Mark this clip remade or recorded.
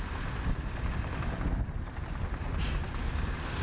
recorded